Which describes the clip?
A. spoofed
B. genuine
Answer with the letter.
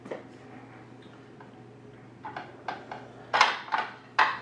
B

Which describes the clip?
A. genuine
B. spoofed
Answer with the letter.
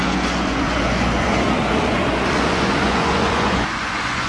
B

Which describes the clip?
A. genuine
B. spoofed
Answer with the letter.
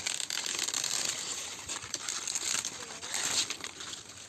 A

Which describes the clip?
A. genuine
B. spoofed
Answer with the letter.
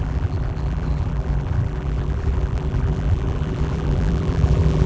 B